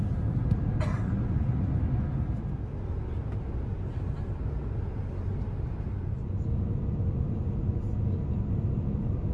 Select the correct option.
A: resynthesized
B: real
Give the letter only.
B